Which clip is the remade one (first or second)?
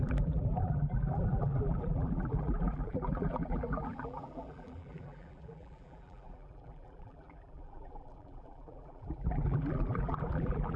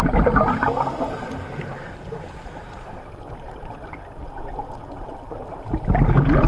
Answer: first